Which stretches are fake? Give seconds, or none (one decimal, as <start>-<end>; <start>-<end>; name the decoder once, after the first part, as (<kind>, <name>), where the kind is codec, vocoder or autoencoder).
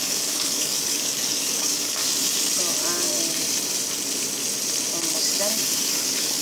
0.0-2.0 (codec, DAC); 5.8-6.4